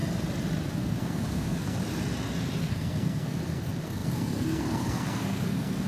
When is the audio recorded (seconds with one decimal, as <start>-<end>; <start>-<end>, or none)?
0.0-0.7; 1.8-2.6